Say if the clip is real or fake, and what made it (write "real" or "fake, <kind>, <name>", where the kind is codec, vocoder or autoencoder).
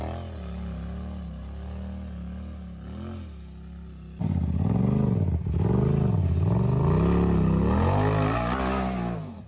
real